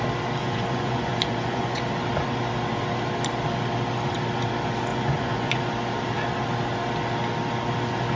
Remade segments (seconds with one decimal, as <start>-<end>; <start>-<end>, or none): 0.4-1.8; 4.9-5.6